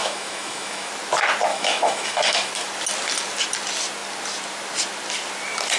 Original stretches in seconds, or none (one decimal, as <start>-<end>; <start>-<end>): 0.9-1.5; 2.5-5.8